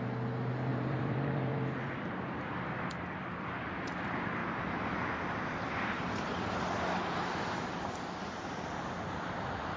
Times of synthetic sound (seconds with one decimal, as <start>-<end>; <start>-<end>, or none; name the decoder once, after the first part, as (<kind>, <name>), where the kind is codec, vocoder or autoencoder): 0.7-3.5 (vocoder, BigVGAN v2); 4.4-5.0; 5.5-6.3